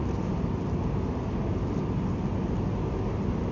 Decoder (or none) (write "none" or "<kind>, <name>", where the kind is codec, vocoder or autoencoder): none